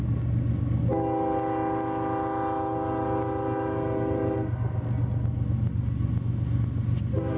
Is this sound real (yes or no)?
yes